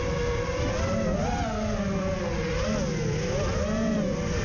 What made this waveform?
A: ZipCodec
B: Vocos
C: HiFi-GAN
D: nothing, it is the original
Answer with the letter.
D